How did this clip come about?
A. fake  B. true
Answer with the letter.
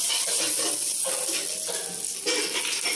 B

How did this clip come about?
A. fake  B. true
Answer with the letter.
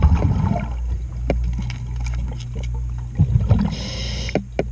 B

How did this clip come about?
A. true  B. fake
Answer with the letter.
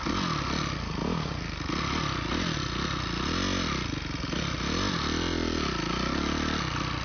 A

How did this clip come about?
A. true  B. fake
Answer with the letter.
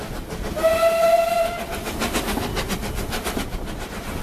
A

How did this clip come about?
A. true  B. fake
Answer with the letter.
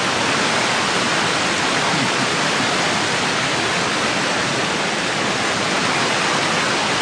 A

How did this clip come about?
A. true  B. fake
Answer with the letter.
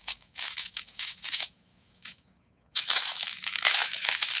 B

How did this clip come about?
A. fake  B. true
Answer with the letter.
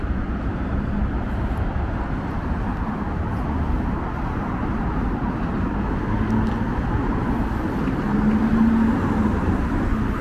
B